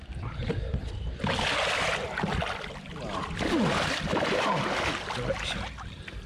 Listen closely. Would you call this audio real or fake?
real